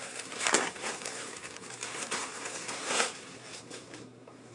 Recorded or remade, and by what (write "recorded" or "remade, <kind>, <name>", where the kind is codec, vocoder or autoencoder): remade, codec, SNAC